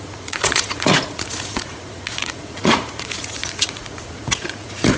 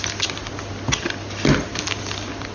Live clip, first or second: second